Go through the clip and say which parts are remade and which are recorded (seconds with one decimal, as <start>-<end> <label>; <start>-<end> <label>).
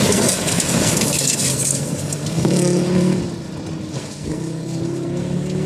0.0-3.2 remade; 3.2-3.9 recorded; 3.9-5.7 remade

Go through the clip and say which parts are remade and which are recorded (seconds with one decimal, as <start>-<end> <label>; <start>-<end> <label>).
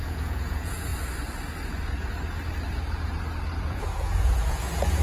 0.0-0.9 remade; 0.9-3.6 recorded; 3.6-5.0 remade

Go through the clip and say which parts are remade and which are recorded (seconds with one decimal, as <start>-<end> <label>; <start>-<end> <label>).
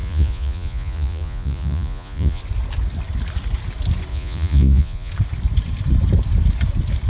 0.0-2.4 remade; 2.4-4.1 recorded; 4.1-5.1 remade; 5.1-7.1 recorded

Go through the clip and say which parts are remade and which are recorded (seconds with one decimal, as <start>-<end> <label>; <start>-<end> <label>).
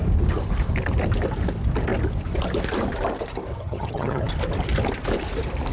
0.0-3.5 recorded; 3.5-4.3 remade; 4.3-5.7 recorded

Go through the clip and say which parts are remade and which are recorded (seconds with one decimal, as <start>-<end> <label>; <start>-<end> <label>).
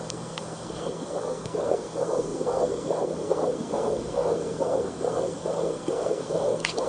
0.0-6.9 remade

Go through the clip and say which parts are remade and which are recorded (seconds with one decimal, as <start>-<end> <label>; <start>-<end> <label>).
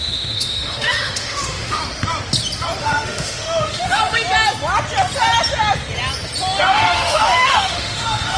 0.0-1.8 remade; 1.8-2.8 recorded; 2.8-4.0 remade; 4.0-6.7 recorded; 6.7-8.4 remade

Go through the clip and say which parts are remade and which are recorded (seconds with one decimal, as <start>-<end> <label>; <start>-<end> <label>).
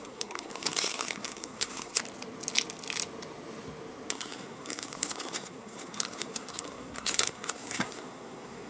0.0-2.0 remade; 2.0-4.1 recorded; 4.1-8.7 remade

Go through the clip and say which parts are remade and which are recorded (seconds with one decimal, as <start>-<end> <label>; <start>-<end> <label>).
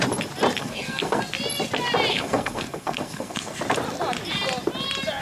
0.0-0.6 recorded; 0.6-1.2 remade; 1.2-2.1 recorded; 2.1-3.6 remade; 3.6-5.2 recorded